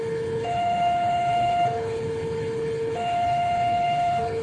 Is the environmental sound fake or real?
fake